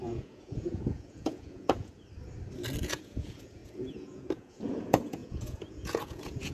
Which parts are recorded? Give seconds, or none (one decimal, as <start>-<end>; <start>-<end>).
1.9-2.8